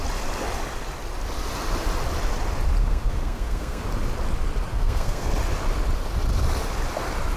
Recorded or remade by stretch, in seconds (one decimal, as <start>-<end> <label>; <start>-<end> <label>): 0.0-2.8 recorded; 2.8-3.8 remade; 3.8-4.7 recorded; 4.7-5.3 remade; 5.3-7.4 recorded